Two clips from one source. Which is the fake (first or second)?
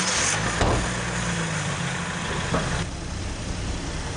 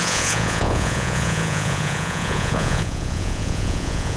second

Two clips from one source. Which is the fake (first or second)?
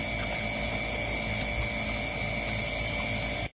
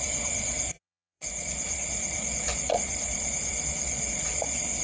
second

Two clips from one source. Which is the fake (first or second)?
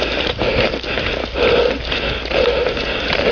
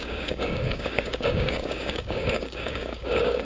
second